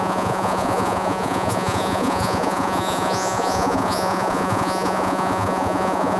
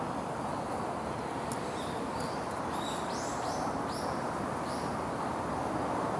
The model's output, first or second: first